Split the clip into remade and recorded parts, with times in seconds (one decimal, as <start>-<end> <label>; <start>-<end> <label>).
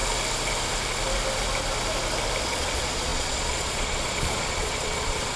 0.0-2.4 recorded; 2.4-5.4 remade